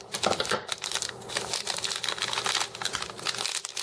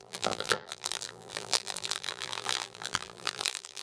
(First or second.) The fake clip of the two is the second